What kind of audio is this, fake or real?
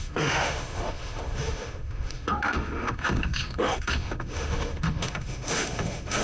fake